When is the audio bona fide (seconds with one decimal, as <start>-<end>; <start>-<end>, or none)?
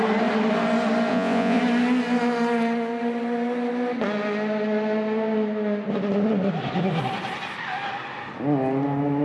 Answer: 0.0-1.1; 1.6-9.2